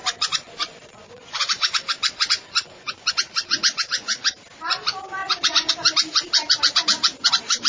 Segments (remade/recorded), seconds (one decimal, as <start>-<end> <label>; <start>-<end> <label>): 0.0-4.3 remade; 4.3-5.2 recorded; 5.2-5.7 remade; 5.7-7.7 recorded